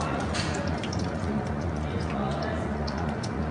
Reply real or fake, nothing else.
fake